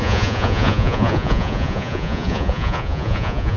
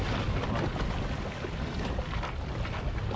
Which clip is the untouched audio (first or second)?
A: second